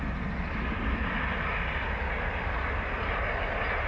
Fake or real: real